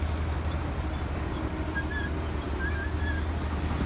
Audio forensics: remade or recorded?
recorded